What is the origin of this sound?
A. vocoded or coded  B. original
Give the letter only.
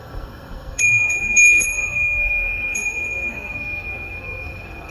A